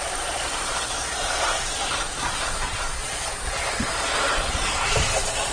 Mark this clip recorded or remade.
remade